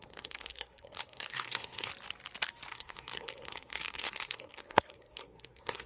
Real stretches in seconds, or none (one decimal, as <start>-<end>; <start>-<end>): 1.9-2.7